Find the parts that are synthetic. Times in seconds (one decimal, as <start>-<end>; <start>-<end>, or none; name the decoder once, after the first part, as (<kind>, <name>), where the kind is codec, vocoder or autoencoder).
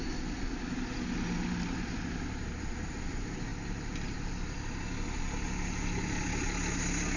none